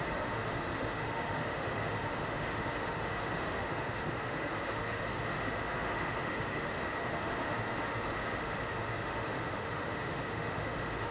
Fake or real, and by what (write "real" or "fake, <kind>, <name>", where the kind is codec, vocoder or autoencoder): fake, autoencoder, DAC-VAE